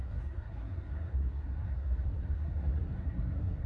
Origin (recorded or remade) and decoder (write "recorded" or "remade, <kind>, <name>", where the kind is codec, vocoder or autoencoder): remade, codec, SNAC